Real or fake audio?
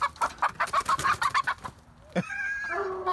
real